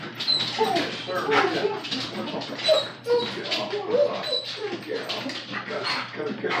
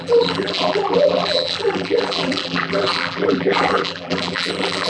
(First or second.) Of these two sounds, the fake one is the second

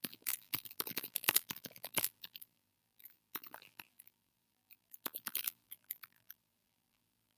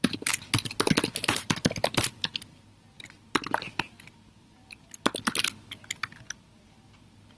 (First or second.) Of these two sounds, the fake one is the first